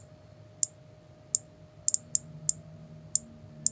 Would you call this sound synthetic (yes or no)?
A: no